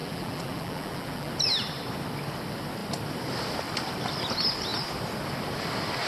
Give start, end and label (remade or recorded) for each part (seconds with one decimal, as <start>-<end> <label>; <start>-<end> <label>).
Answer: 0.0-1.3 remade; 1.3-6.1 recorded